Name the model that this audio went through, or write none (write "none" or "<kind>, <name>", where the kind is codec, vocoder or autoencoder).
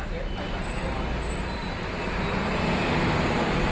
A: none